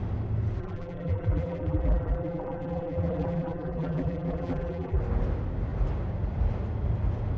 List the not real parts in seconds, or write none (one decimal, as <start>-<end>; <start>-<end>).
0.6-5.0